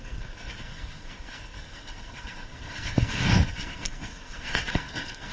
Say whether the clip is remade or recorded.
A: remade